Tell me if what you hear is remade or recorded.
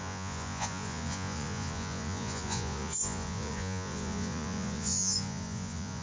remade